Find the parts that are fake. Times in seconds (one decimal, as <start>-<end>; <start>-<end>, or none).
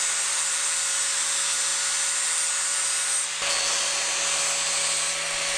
none